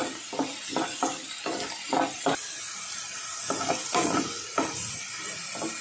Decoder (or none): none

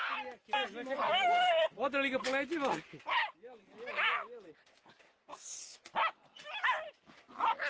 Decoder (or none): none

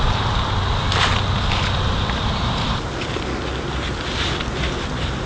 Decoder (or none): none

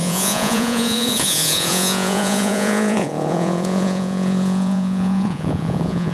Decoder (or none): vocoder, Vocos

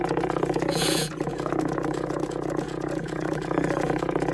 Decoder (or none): vocoder, Vocos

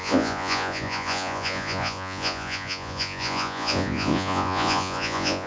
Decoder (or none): vocoder, Vocos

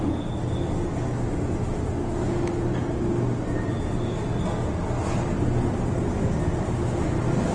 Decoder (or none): none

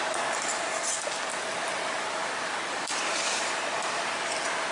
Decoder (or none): none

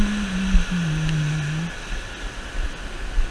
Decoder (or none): none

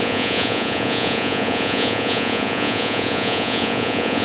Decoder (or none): vocoder, Vocos